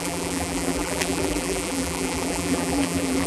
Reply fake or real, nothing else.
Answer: fake